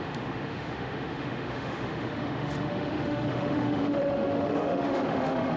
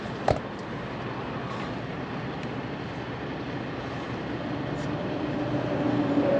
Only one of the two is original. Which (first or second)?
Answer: second